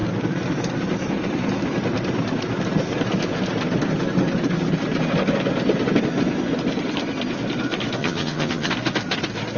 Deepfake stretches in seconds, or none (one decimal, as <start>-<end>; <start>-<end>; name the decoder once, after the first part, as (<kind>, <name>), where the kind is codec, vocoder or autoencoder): 8.0-8.7 (vocoder, HiFi-GAN)